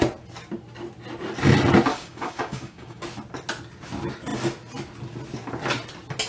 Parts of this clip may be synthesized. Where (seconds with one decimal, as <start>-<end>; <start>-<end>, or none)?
1.9-3.0